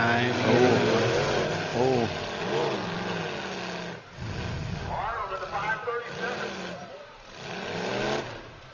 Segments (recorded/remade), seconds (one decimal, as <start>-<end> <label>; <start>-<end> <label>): 0.0-8.7 recorded